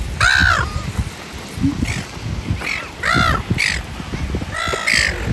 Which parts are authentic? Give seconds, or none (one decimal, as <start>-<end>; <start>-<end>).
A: 0.0-5.3